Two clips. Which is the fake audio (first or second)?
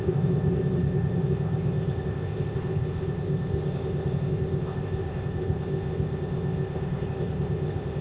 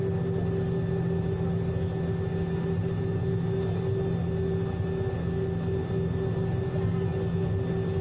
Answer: first